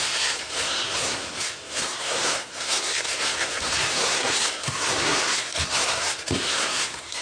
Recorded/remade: remade